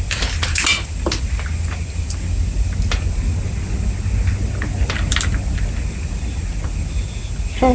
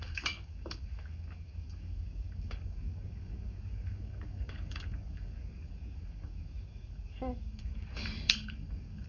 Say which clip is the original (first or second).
first